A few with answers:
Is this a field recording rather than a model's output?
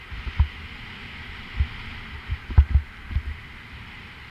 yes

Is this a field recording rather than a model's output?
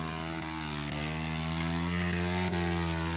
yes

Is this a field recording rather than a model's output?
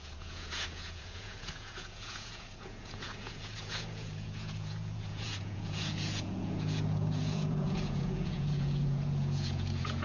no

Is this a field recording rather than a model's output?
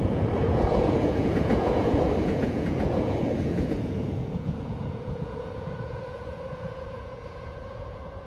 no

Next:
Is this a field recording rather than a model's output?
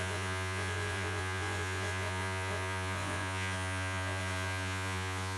no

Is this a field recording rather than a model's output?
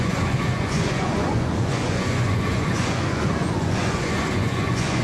no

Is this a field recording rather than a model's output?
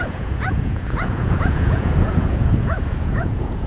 no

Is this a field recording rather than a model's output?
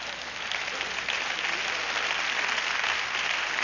yes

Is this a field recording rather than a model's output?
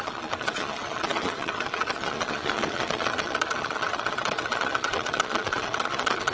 no